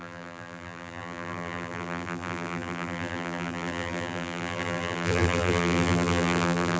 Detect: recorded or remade remade